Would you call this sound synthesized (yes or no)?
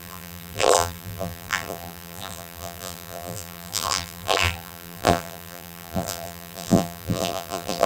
yes